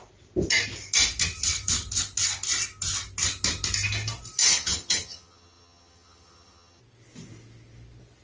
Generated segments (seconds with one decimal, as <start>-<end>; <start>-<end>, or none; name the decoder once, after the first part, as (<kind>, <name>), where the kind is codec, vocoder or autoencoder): 4.4-6.8 (vocoder, HiFi-GAN)